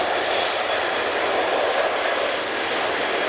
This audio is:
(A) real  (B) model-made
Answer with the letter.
A